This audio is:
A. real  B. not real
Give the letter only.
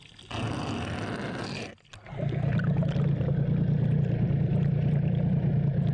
A